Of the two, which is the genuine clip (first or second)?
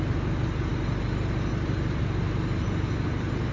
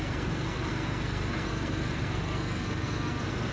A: first